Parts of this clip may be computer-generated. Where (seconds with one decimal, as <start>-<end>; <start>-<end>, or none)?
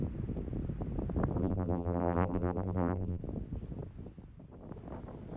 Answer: 1.4-3.2